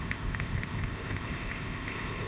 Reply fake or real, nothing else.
fake